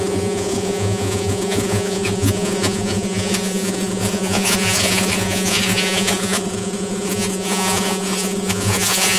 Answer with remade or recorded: remade